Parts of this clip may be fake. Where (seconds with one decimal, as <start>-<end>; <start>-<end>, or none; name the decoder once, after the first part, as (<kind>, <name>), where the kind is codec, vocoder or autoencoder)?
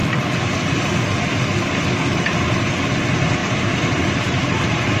3.4-5.0 (vocoder, BigVGAN v2)